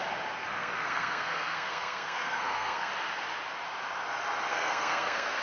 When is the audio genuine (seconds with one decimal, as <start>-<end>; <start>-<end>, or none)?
0.0-0.4; 2.9-4.5